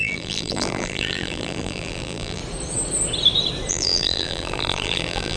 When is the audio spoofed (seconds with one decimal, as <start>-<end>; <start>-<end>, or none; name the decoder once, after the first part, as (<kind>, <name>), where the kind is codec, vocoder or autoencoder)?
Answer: 0.0-2.4 (vocoder, BigVGAN v2); 3.7-5.4